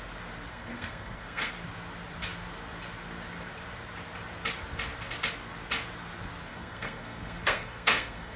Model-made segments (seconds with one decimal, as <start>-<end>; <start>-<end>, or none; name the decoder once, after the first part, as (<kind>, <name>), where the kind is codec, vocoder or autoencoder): 0.5-1.5 (codec, SNAC); 6.5-8.4